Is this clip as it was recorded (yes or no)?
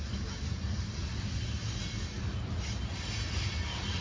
yes